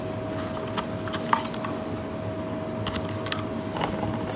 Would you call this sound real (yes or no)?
yes